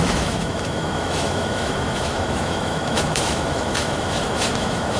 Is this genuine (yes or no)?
no